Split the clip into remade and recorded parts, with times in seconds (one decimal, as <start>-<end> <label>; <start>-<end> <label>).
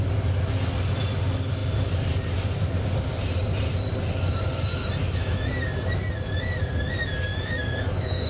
0.0-5.0 recorded; 5.0-5.5 remade; 5.5-7.3 recorded; 7.3-8.3 remade